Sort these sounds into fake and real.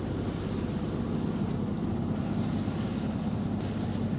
real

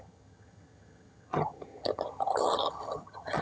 fake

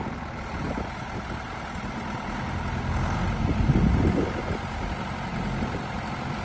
real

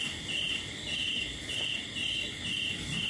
real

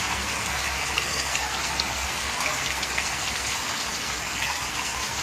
fake